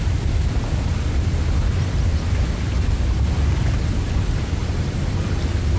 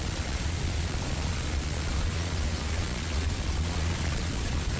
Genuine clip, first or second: first